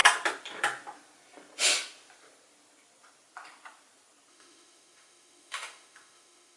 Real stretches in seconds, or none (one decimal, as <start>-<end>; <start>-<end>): 0.0-4.3